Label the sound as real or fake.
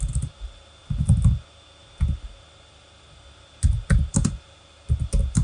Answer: real